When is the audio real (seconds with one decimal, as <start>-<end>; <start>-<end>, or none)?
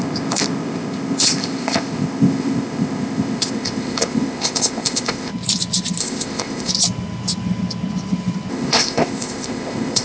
5.3-6.0; 6.7-8.5